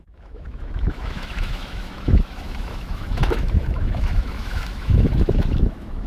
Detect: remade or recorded remade